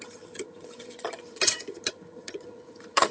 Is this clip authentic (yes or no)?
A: no